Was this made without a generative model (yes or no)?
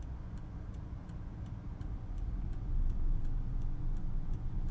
no